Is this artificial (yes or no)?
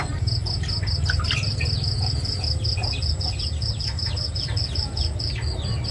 no